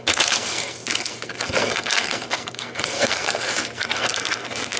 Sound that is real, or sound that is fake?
fake